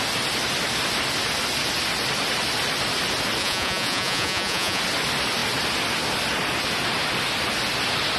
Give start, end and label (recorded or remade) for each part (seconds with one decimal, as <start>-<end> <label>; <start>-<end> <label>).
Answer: 0.0-3.4 recorded; 3.4-4.8 remade; 4.8-8.2 recorded